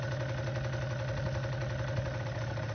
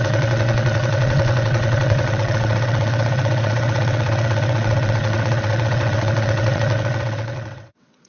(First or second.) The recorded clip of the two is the first